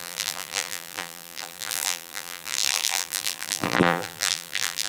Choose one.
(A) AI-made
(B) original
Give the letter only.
A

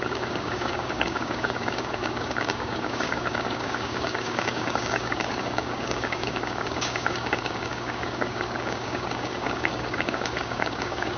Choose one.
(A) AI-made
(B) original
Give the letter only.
A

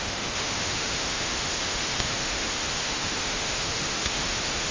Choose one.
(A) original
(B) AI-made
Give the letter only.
B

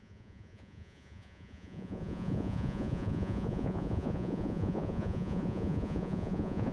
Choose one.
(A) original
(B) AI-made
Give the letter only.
B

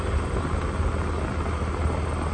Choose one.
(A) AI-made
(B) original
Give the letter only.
B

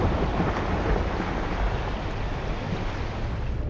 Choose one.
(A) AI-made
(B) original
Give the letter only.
B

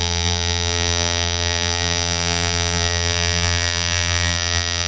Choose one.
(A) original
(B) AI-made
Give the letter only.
B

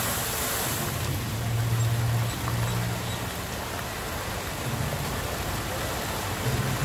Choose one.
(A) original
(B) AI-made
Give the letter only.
A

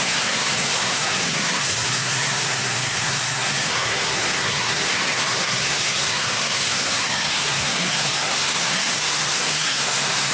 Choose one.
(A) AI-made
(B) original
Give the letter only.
A